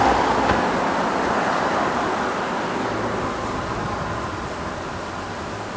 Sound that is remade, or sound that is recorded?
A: recorded